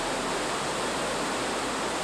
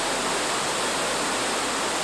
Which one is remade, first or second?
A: first